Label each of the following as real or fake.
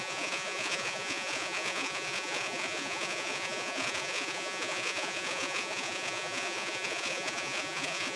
fake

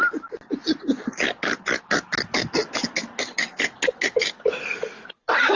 real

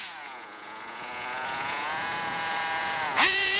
fake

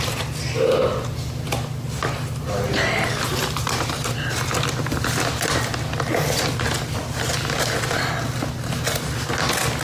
real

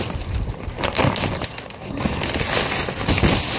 real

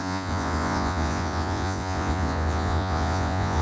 fake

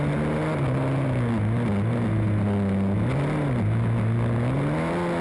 real